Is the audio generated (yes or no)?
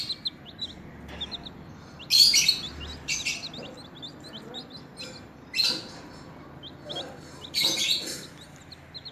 no